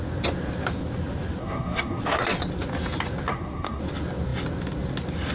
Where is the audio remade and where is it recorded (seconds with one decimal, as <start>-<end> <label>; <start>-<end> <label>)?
0.0-1.4 recorded; 1.4-2.0 remade; 2.0-3.3 recorded; 3.3-3.8 remade; 3.8-5.3 recorded